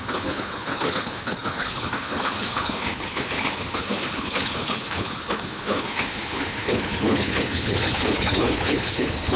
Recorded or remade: remade